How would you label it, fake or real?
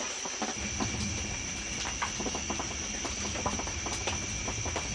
real